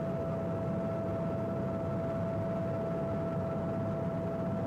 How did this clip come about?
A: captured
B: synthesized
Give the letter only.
A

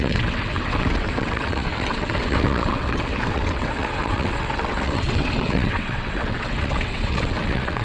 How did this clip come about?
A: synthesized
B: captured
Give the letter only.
A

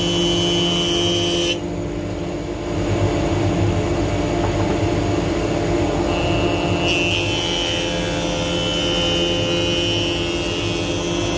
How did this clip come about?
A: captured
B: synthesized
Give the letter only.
A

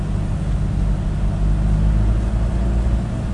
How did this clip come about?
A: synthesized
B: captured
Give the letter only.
B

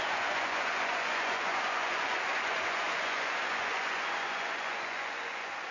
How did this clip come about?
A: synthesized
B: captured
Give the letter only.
A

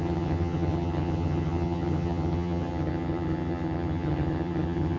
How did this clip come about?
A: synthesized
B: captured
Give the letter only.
A